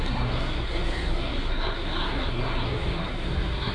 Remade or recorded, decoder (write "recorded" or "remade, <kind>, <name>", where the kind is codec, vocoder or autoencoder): remade, codec, SNAC